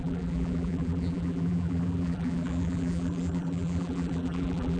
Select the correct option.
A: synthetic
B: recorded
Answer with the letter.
A